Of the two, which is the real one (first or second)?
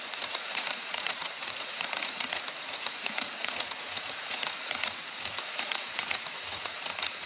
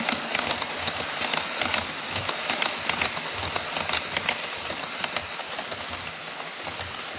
second